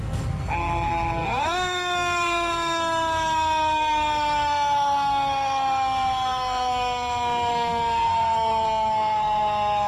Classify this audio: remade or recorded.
remade